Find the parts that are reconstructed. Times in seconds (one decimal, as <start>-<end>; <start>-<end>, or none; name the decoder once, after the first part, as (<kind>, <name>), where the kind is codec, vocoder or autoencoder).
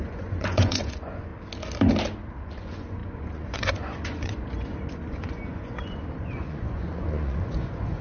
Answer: 0.0-1.3 (vocoder, Vocos); 2.4-8.0